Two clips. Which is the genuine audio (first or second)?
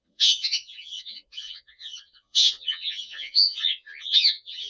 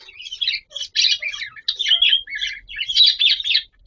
second